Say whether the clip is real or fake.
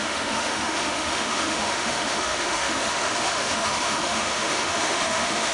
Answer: fake